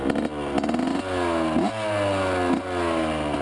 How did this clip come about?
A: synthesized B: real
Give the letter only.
B